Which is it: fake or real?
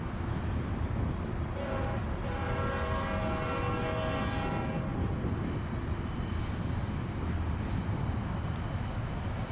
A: real